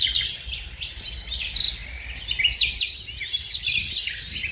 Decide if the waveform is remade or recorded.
recorded